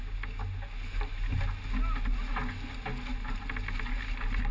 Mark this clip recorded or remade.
recorded